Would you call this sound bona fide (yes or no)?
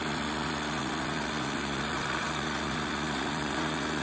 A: no